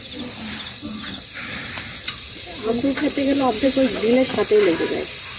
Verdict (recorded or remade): remade